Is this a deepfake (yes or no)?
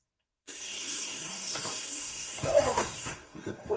yes